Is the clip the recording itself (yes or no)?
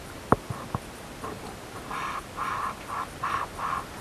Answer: yes